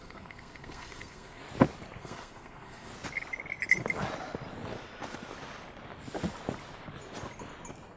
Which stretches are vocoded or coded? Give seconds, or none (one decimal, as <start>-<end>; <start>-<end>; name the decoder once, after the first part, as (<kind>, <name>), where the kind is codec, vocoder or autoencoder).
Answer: 0.0-1.4 (codec, SNAC); 2.0-2.9